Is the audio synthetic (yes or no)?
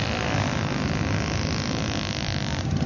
no